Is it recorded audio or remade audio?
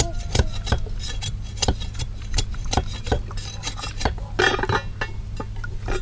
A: recorded